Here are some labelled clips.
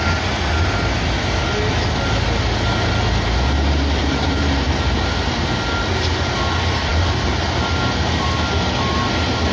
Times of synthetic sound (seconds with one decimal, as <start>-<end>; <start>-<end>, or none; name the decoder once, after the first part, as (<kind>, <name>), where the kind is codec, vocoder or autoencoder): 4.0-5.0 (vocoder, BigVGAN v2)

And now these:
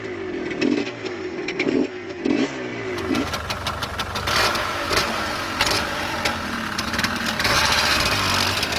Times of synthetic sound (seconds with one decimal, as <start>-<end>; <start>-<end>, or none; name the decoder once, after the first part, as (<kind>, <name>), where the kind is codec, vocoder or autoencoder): 0.8-2.2 (codec, SNAC)

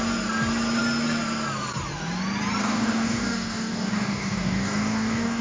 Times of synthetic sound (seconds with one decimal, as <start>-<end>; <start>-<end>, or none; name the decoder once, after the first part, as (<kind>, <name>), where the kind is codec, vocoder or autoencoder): 2.6-5.4 (codec, DAC)

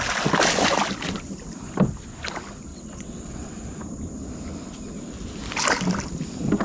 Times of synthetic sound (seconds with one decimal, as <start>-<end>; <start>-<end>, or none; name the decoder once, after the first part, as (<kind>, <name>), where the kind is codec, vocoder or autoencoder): 2.7-3.5 (vocoder, WaveNeXt)